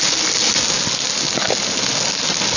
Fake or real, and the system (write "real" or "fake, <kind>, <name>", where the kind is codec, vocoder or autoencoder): real